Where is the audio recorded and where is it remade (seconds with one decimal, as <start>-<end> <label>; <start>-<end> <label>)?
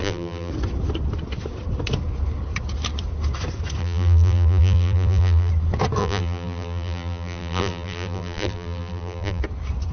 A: 0.0-0.5 remade; 0.5-3.8 recorded; 3.8-5.5 remade; 5.5-6.0 recorded; 6.0-9.4 remade; 9.4-9.9 recorded